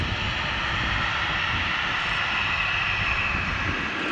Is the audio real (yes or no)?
yes